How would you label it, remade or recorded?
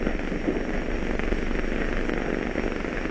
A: recorded